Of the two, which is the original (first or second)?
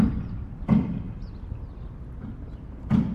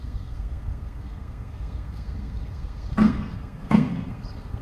first